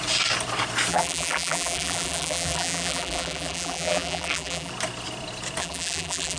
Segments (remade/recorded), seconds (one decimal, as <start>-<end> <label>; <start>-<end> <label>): 0.0-0.9 recorded; 0.9-4.7 remade; 4.7-5.6 recorded; 5.6-6.4 remade